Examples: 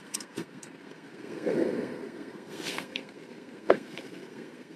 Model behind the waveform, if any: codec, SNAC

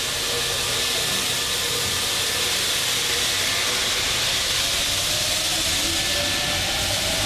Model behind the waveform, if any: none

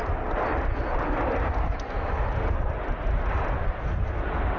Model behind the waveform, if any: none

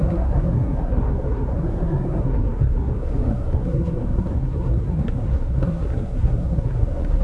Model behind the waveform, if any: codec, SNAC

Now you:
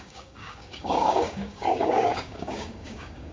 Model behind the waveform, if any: codec, DAC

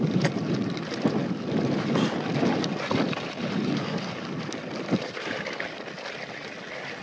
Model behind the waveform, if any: none